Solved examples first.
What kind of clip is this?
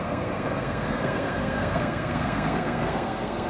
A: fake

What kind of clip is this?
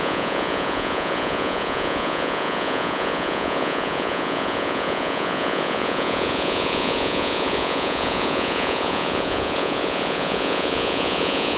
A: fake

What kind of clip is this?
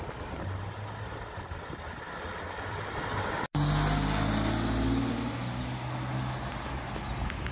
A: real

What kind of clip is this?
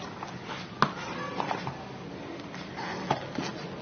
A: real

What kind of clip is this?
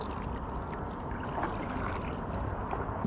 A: real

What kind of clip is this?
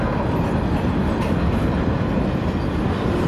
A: real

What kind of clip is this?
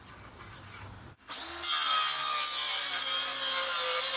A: real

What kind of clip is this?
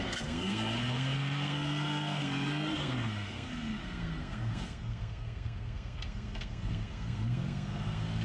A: fake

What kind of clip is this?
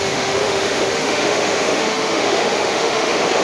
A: fake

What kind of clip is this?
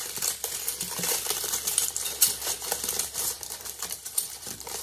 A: fake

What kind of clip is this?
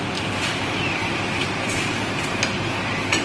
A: fake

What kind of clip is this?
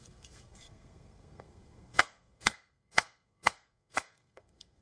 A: fake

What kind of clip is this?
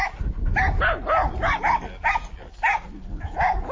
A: real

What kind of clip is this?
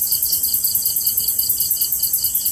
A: fake